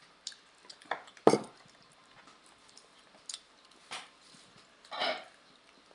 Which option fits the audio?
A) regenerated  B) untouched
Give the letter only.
B